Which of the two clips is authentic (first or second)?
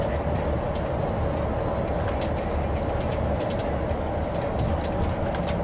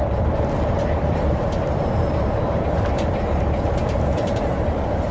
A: first